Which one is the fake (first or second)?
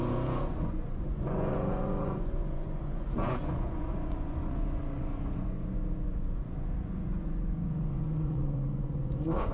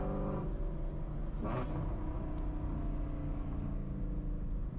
first